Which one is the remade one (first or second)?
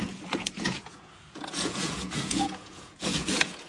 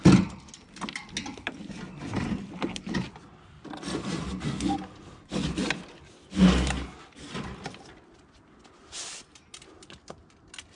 first